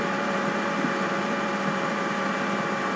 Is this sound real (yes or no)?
no